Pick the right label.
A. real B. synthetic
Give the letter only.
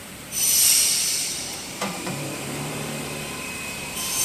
B